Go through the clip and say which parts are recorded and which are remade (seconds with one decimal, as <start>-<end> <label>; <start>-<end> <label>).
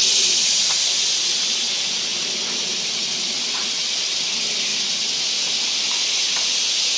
0.0-7.0 recorded